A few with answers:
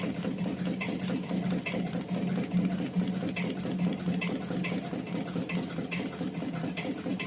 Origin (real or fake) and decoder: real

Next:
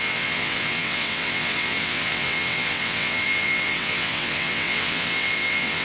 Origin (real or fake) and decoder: fake, vocoder, WaveNeXt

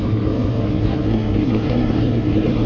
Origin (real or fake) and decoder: fake, codec, SNAC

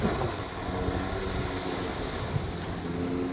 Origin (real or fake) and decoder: real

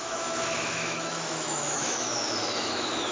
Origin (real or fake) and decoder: fake, autoencoder, DAC-VAE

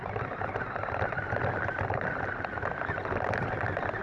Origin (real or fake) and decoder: real